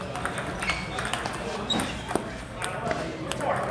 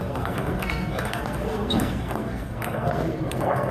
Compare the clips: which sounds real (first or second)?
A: first